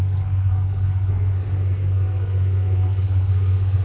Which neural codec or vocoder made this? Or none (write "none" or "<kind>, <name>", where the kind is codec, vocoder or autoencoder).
codec, SNAC